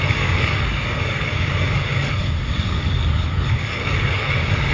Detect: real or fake fake